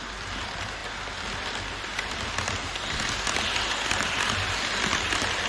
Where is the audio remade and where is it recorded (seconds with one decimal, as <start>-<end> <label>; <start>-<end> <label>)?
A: 0.0-5.5 recorded